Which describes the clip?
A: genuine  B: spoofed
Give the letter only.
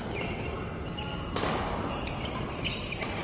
A